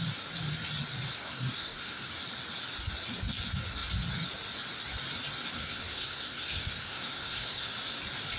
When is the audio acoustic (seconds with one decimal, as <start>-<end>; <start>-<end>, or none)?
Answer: 0.0-1.1; 2.1-5.4; 7.7-8.4